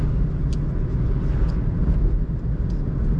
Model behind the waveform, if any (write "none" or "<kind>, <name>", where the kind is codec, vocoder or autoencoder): none